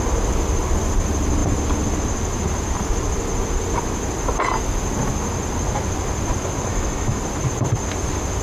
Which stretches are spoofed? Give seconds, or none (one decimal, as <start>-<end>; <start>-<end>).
6.7-7.2